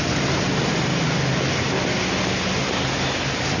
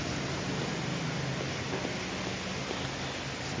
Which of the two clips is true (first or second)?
second